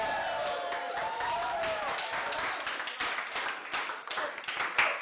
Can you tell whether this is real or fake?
real